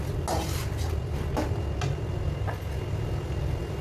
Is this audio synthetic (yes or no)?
no